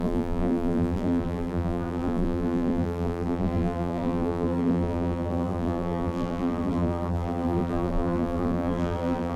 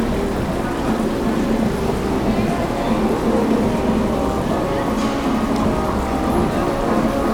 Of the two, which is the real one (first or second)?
second